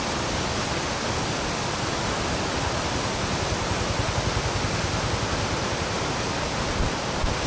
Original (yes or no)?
yes